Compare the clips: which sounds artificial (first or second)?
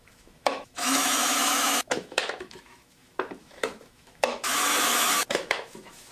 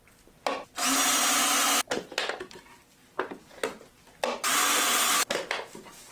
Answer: first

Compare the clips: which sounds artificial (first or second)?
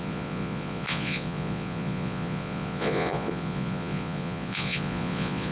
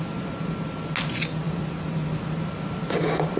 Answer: first